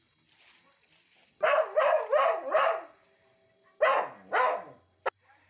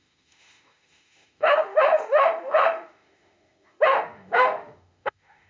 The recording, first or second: first